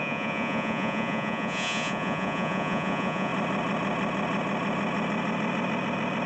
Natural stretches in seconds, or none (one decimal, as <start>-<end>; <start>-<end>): 3.3-6.3